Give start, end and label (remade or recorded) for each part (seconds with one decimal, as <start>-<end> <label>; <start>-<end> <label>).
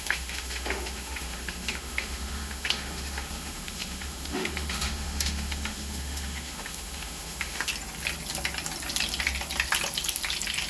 0.0-7.7 remade; 7.7-10.7 recorded